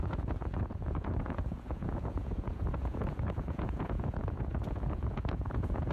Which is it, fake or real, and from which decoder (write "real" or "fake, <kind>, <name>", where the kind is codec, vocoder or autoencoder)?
fake, vocoder, Vocos